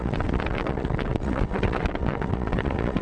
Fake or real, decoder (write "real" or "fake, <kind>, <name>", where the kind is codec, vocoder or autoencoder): fake, vocoder, WaveNeXt